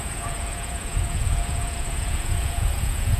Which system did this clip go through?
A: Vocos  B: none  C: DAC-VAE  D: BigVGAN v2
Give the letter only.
A